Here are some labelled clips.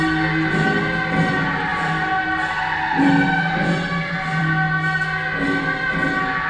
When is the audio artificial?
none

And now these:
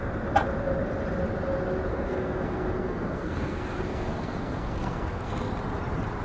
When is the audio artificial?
1.9-5.5 (codec, SNAC)

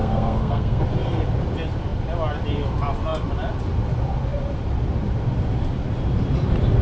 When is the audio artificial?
0.0-0.8 (codec, SNAC)

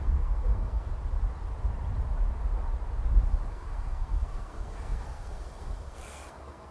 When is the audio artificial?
0.0-0.9 (codec, SNAC); 3.5-6.7